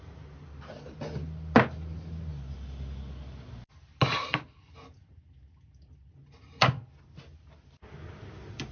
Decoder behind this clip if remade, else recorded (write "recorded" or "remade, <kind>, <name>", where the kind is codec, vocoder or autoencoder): recorded